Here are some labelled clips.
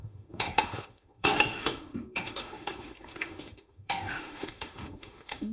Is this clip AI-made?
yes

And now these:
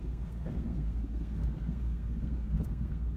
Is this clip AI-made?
yes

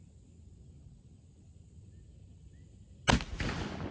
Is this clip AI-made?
no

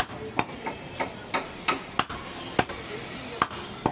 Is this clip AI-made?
no